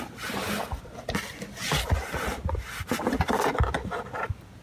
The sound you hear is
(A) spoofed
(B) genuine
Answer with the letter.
B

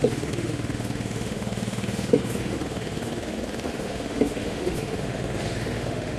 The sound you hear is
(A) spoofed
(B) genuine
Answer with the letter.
A